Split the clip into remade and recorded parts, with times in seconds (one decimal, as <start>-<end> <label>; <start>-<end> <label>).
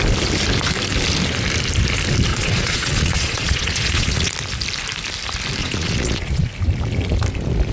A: 0.0-2.3 recorded; 2.3-4.3 remade; 4.3-5.6 recorded; 5.6-6.5 remade; 6.5-7.7 recorded